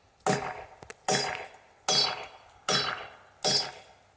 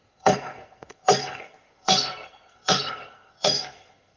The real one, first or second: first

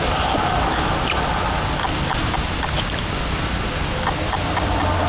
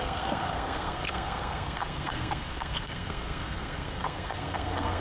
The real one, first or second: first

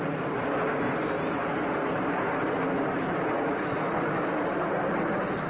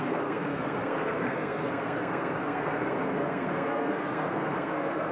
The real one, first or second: first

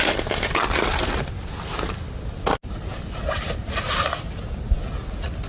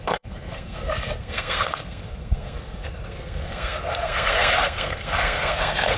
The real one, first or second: first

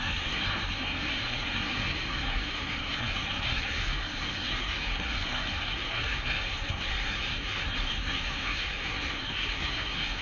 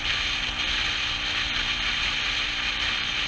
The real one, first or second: second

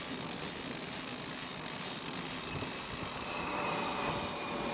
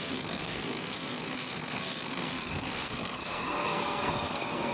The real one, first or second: first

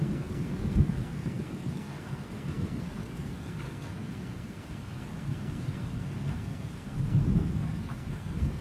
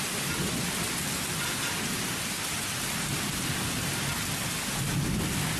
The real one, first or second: second